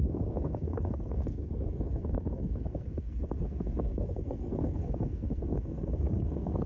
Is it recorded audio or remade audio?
remade